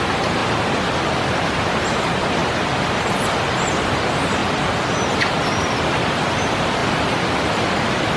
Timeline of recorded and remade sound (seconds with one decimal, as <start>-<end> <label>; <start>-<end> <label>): 0.0-0.4 remade; 0.4-1.0 recorded; 1.0-2.4 remade; 2.4-3.9 recorded; 3.9-4.4 remade; 4.4-6.3 recorded; 6.3-6.8 remade; 6.8-7.7 recorded; 7.7-8.2 remade